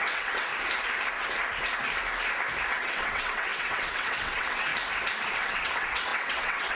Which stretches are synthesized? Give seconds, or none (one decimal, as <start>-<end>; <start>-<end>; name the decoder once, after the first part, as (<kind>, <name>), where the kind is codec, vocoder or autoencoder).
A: 0.0-0.5 (vocoder, WaveNeXt); 2.7-4.7; 5.3-6.7